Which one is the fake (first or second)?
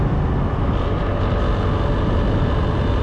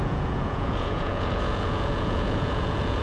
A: second